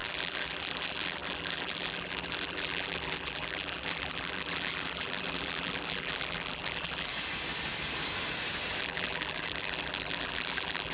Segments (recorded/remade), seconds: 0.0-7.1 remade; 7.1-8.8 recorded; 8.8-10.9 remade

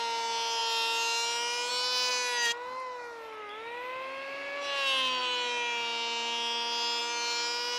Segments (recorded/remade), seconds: 0.0-7.8 recorded

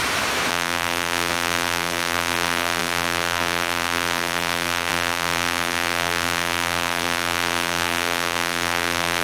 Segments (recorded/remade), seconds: 0.0-0.5 recorded; 0.5-9.2 remade

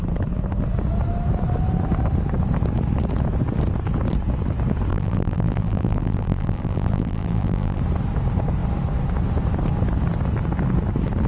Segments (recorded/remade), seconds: 0.0-4.9 recorded; 4.9-7.8 remade; 7.8-11.3 recorded

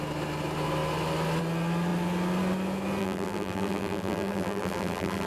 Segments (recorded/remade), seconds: 0.0-3.0 recorded; 3.0-5.3 remade

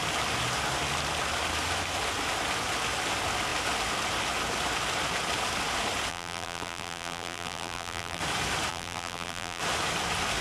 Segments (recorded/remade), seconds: 0.0-6.1 recorded; 6.1-8.2 remade; 8.2-8.7 recorded; 8.7-9.6 remade; 9.6-10.4 recorded